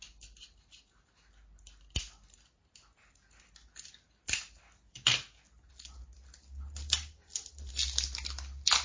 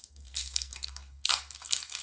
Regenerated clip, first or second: second